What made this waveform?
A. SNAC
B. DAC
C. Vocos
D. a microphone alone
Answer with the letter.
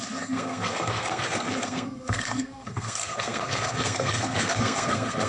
A